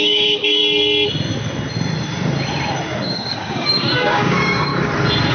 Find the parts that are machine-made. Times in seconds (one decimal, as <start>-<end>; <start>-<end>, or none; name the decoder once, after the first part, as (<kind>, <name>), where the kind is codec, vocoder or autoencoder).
0.0-0.6 (codec, DAC); 3.1-4.7